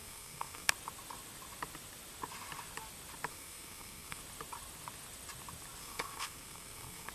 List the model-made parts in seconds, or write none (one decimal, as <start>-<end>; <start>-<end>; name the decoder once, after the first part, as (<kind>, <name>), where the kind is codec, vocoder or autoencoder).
0.0-0.7 (codec, SNAC); 3.3-4.2; 5.8-7.1